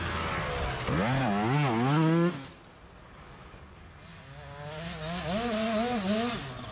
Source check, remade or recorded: recorded